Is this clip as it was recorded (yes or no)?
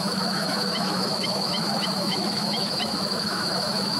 no